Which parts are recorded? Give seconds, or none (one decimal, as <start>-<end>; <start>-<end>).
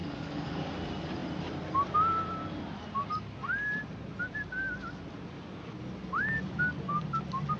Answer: 0.7-7.6